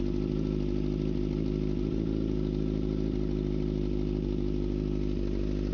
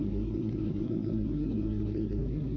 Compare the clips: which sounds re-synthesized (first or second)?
second